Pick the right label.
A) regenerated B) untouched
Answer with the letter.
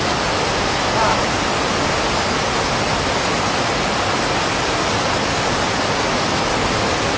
B